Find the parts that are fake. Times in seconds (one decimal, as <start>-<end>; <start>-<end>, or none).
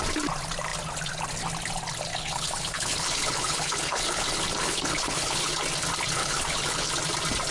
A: 2.1-5.5; 6.2-6.9